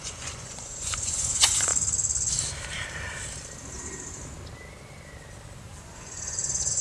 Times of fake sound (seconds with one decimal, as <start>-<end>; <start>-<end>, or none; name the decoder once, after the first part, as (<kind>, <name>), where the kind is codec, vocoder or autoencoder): 0.0-1.7 (vocoder, Vocos); 5.8-6.8